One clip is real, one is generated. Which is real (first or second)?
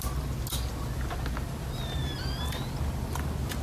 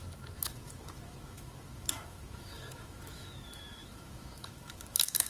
first